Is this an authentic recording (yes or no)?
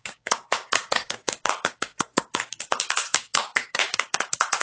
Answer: no